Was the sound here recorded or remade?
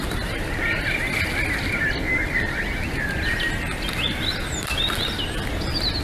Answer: recorded